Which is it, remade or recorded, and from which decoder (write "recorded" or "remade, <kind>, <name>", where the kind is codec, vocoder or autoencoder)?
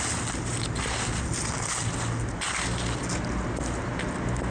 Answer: recorded